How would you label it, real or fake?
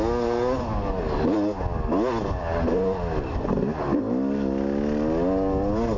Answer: real